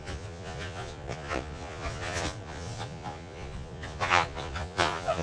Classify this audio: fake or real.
fake